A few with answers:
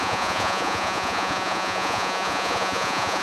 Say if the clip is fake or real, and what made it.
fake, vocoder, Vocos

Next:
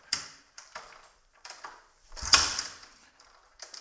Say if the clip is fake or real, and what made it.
fake, vocoder, BigVGAN v2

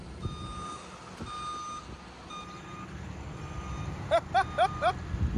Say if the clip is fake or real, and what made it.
real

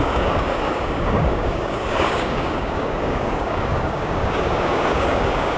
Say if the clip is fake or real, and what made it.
fake, codec, DAC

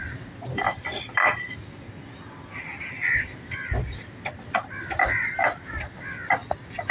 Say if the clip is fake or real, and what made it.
real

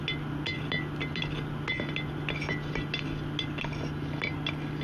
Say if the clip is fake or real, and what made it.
real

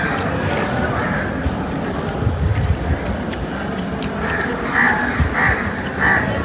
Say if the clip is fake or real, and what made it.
real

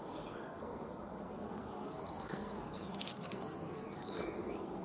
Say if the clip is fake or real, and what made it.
fake, codec, SNAC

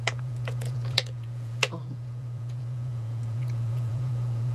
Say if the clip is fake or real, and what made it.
fake, vocoder, Vocos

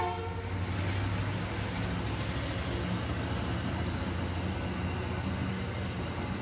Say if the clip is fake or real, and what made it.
real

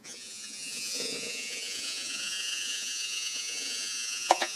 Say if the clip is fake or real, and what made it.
fake, vocoder, Vocos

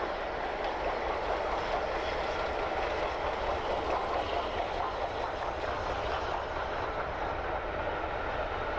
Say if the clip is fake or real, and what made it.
real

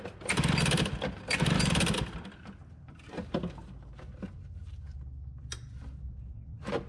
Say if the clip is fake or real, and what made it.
real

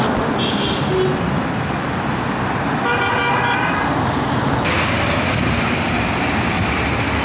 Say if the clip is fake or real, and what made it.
real